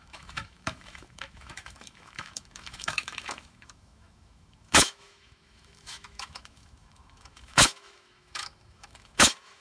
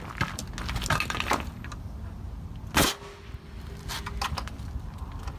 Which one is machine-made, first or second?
first